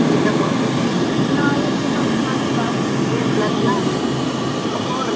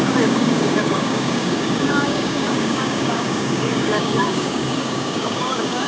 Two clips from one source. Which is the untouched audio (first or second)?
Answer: first